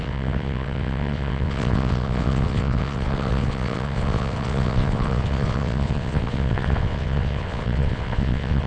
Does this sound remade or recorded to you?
remade